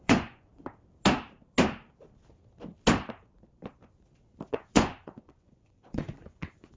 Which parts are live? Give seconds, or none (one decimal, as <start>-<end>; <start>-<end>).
0.5-4.5